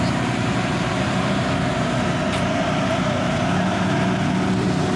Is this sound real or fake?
real